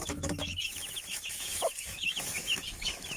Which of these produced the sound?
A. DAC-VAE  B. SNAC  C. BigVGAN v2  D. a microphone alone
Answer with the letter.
A